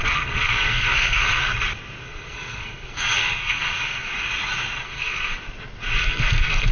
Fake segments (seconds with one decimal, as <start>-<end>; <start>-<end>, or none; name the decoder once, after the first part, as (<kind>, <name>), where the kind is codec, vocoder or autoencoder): 0.0-1.4 (codec, SNAC); 2.0-4.1; 4.8-5.3; 6.0-6.7

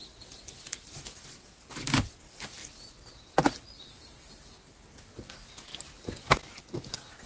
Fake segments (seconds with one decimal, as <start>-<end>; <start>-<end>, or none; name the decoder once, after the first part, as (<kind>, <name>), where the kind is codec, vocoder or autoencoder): none

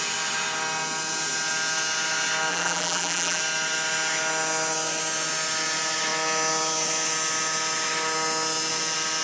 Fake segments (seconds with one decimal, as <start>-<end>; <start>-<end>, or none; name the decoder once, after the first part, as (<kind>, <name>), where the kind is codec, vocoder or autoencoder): 2.5-3.4 (vocoder, BigVGAN v2)

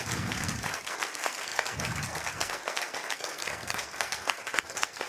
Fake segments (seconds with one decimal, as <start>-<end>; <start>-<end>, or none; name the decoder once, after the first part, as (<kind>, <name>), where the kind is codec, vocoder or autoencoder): 0.0-5.1 (codec, SNAC)

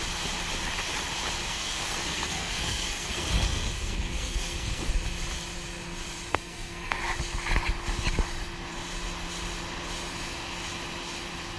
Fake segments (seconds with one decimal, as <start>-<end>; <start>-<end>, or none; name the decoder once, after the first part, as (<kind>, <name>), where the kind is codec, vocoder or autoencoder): 1.4-4.9 (codec, SNAC); 6.3-7.0

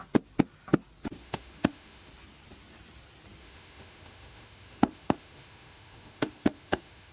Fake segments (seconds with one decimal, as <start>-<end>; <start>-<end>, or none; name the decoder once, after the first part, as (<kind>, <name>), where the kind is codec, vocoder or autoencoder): 1.2-2.1 (autoencoder, DAC-VAE); 3.4-7.1

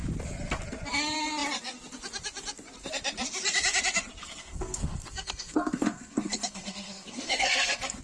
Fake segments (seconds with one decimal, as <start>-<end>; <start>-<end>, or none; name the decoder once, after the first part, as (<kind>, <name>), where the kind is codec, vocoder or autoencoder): 4.2-8.0 (codec, SNAC)